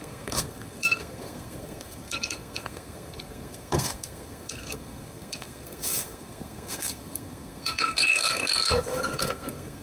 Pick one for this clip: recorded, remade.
remade